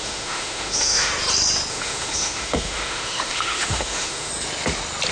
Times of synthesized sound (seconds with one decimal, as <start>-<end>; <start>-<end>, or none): 0.0-1.1; 1.7-4.3